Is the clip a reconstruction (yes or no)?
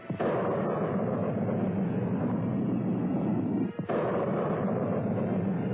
no